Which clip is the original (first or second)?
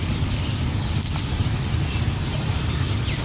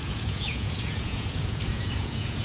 first